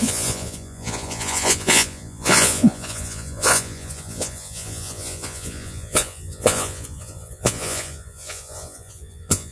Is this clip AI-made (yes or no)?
yes